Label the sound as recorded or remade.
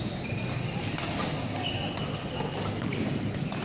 recorded